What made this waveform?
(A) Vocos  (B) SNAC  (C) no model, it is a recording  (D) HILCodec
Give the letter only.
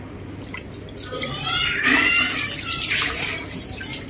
C